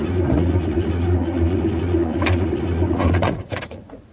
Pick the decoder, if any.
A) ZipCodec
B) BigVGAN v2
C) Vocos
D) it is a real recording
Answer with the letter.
C